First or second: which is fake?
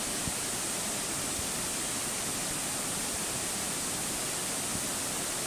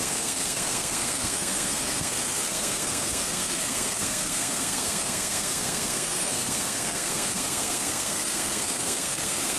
second